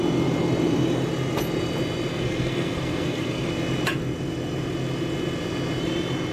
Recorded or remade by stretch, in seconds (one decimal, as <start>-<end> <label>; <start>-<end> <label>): 0.0-2.1 recorded; 2.1-3.5 remade; 3.5-6.3 recorded